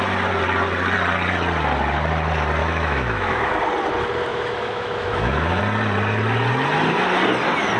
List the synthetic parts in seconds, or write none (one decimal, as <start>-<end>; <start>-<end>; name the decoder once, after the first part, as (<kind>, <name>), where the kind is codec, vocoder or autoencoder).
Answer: 2.6-3.5 (autoencoder, DAC-VAE); 4.3-5.6